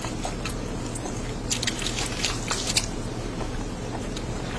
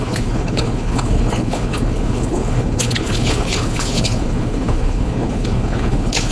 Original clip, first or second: first